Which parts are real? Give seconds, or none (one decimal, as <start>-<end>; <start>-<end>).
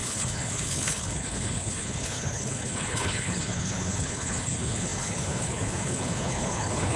none